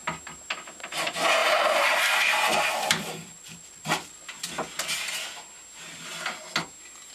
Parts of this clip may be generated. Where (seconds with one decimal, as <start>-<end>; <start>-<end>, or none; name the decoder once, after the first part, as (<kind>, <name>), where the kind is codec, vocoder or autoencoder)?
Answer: 1.4-4.4 (vocoder, BigVGAN v2)

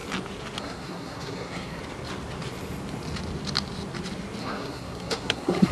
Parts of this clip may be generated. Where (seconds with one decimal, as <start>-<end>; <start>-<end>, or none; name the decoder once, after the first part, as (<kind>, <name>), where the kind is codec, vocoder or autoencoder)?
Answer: 0.6-1.8 (codec, SNAC); 4.4-5.7